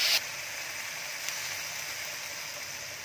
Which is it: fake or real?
real